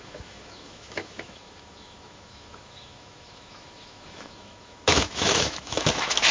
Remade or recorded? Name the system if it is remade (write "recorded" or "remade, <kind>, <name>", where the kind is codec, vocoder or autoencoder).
remade, autoencoder, DAC-VAE